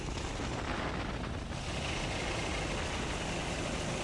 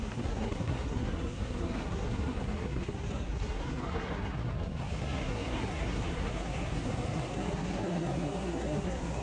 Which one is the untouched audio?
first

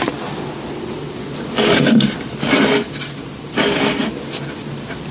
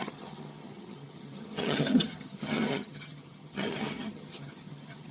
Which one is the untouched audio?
first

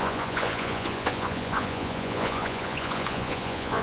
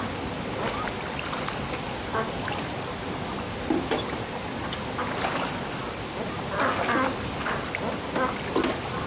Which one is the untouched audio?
second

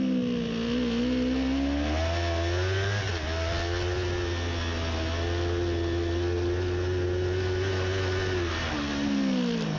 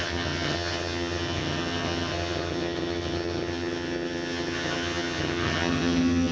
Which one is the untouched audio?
first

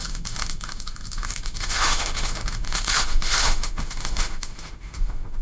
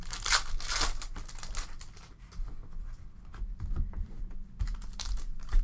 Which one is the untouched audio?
second